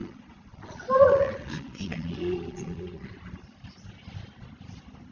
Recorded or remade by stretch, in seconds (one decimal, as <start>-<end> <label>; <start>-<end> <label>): 0.0-3.1 remade; 3.1-5.1 recorded

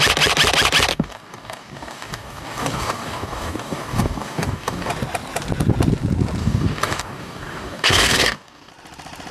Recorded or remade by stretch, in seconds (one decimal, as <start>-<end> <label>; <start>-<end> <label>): 0.0-0.9 recorded; 0.9-4.9 remade; 4.9-6.4 recorded; 6.4-8.7 remade; 8.7-9.3 recorded

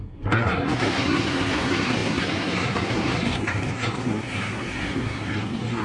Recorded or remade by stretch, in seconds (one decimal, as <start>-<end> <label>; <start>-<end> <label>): 0.0-5.8 remade

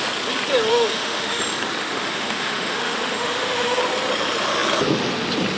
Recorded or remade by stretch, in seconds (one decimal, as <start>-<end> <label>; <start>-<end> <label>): 0.0-0.7 recorded; 0.7-1.4 remade; 1.4-1.8 recorded; 1.8-3.8 remade; 3.8-5.6 recorded

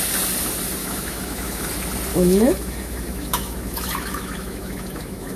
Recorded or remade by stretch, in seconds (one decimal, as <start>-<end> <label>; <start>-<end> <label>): 0.0-0.8 recorded; 0.8-1.7 remade; 1.7-2.1 recorded; 2.1-5.4 remade

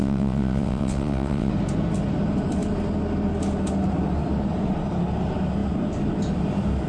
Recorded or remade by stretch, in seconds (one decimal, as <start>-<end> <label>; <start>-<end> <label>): 0.0-1.5 remade; 1.5-6.9 recorded

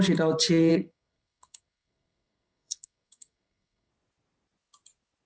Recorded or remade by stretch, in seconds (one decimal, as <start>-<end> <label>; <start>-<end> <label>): 0.0-0.7 recorded; 0.7-3.9 remade; 3.9-5.3 recorded